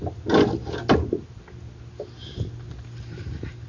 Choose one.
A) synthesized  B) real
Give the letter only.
B